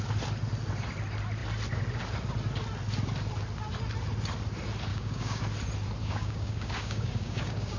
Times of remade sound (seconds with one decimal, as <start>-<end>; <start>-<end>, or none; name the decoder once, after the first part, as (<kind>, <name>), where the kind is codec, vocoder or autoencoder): 4.9-5.4 (codec, DAC); 6.0-7.8